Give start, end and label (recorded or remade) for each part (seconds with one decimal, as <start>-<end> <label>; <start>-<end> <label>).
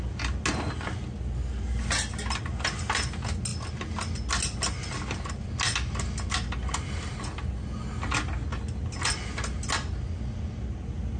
0.0-11.2 recorded